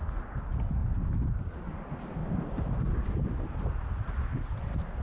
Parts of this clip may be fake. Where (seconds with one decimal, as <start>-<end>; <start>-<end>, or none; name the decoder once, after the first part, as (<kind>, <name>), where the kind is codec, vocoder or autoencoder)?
0.8-1.5 (vocoder, BigVGAN v2)